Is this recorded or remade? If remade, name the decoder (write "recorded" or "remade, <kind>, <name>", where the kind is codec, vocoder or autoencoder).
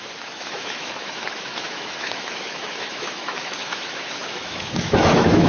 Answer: remade, autoencoder, DAC-VAE